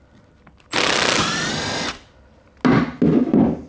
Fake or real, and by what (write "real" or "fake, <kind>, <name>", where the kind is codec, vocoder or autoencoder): real